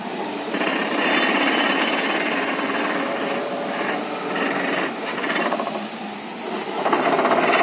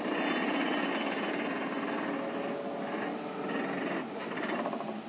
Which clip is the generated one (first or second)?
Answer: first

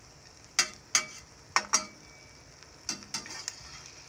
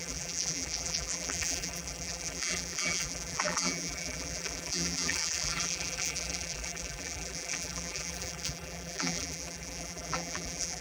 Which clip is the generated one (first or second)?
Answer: second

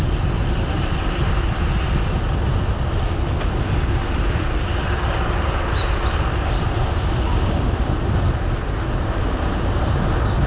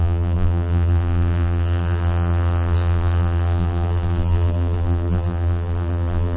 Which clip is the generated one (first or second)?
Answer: second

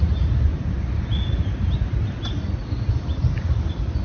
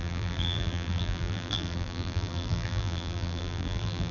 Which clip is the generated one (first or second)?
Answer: second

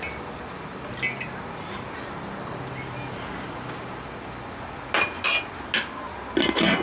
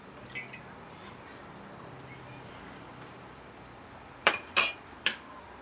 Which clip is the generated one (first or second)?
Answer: second